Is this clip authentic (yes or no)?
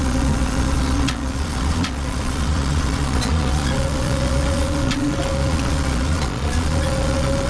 no